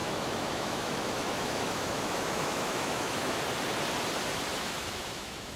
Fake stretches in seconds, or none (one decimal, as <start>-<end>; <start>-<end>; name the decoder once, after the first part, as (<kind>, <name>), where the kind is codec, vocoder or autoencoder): 0.0-3.4 (autoencoder, DAC-VAE); 4.5-5.6